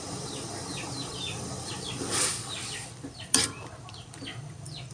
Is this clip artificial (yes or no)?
yes